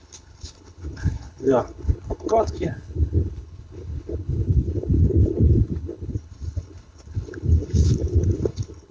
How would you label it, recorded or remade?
remade